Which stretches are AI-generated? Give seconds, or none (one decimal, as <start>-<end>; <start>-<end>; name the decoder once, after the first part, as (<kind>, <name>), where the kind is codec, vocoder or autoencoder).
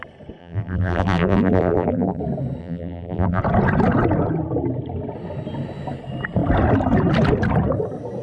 0.4-2.2 (vocoder, BigVGAN v2); 2.6-3.4